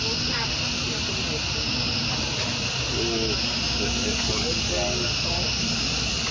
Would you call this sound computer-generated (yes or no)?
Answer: no